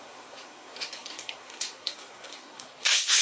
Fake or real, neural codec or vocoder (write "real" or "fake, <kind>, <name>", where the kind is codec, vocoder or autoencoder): fake, codec, SNAC